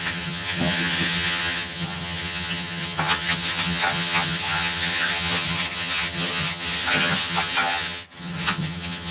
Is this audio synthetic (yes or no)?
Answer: yes